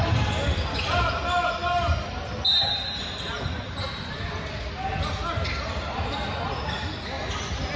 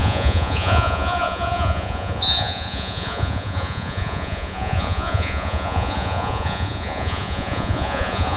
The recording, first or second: first